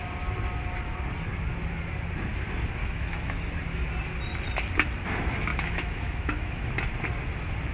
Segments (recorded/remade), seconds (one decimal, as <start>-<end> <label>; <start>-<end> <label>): 0.0-2.8 recorded; 2.8-3.3 remade; 3.3-5.5 recorded; 5.5-6.8 remade; 6.8-7.7 recorded